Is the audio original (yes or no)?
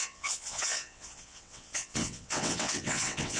no